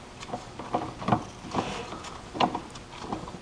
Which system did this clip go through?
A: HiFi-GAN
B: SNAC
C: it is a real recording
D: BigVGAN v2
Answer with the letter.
C